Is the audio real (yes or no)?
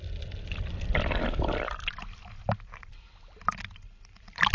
yes